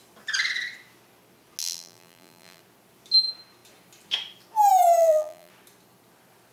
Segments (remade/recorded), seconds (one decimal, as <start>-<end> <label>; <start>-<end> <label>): 0.0-1.6 recorded; 1.6-2.6 remade; 2.6-5.0 recorded; 5.0-5.5 remade; 5.5-6.5 recorded

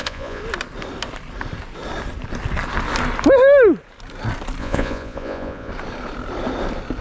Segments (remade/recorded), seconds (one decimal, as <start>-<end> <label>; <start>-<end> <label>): 0.0-0.4 remade; 0.4-4.6 recorded; 4.6-5.7 remade; 5.7-7.0 recorded

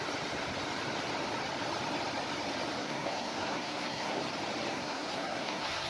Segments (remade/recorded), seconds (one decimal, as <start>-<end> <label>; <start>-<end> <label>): 0.0-2.8 recorded; 2.8-4.2 remade; 4.2-4.7 recorded; 4.7-5.9 remade

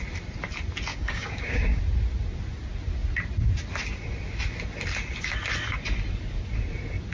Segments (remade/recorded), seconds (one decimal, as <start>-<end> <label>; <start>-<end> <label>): 0.0-0.9 recorded; 0.9-1.8 remade; 1.8-7.1 recorded

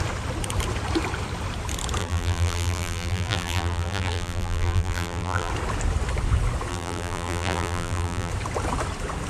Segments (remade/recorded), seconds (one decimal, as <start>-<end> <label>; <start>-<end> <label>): 0.0-2.0 recorded; 2.0-5.5 remade; 5.5-6.7 recorded; 6.7-8.3 remade; 8.3-9.3 recorded

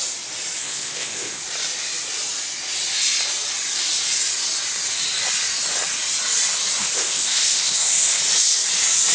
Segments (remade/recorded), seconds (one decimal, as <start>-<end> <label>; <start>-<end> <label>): 0.0-0.6 recorded; 0.6-1.4 remade; 1.4-6.8 recorded; 6.8-8.2 remade; 8.2-9.1 recorded

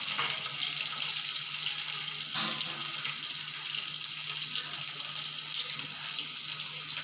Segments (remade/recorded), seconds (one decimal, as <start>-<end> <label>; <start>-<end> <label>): 0.0-7.0 recorded

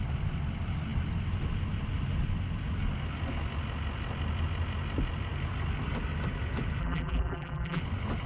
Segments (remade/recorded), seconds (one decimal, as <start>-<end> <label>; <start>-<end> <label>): 0.0-6.8 recorded; 6.8-7.8 remade; 7.8-8.3 recorded